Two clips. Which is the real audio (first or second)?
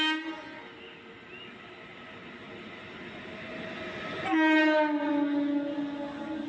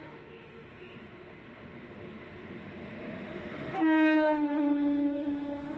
first